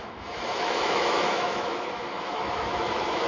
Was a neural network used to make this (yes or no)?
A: yes